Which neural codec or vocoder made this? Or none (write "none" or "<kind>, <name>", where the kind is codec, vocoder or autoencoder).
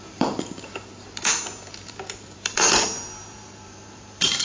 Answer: vocoder, BigVGAN v2